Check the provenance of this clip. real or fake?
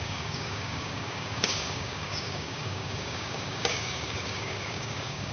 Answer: fake